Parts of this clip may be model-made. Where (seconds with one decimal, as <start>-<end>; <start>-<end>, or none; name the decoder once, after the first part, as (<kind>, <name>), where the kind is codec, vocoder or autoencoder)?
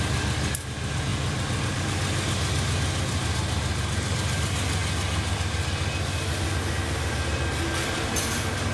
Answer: none